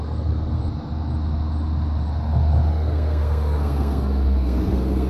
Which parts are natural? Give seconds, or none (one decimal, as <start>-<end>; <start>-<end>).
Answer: 0.6-2.7